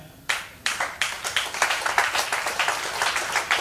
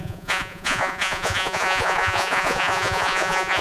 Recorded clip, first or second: first